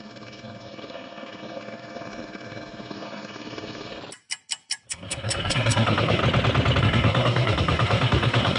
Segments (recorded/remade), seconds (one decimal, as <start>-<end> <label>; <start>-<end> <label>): 0.0-4.0 remade; 4.0-4.9 recorded; 4.9-6.2 remade; 6.2-6.8 recorded; 6.8-8.6 remade

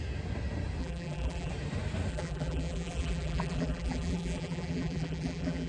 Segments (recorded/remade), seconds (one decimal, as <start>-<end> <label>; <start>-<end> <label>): 0.0-0.8 recorded; 0.8-1.5 remade; 1.5-2.1 recorded; 2.1-5.7 remade

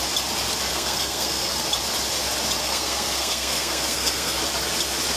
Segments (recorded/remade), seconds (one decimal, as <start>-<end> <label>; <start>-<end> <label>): 0.0-0.7 recorded; 0.7-1.6 remade; 1.6-2.6 recorded; 2.6-4.4 remade; 4.4-5.2 recorded

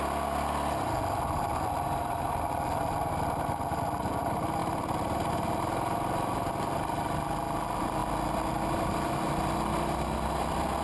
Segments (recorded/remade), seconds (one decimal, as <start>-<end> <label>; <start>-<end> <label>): 0.0-10.8 recorded

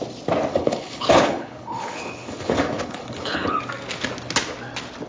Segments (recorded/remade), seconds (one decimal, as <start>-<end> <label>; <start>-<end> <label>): 0.0-0.5 recorded; 0.5-3.6 remade; 3.6-5.1 recorded

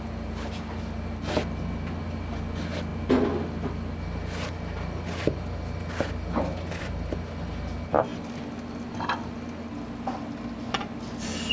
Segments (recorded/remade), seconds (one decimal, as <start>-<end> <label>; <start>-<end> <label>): 0.0-11.5 recorded

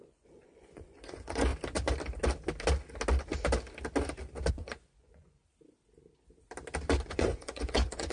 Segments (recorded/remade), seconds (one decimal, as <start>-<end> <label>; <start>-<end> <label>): 0.0-1.5 remade; 1.5-4.5 recorded; 4.5-5.4 remade; 5.4-7.1 recorded; 7.1-8.1 remade